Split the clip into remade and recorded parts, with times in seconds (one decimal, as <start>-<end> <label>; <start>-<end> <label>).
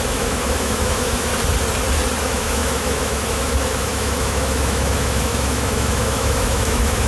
0.0-1.3 remade; 1.3-2.2 recorded; 2.2-7.1 remade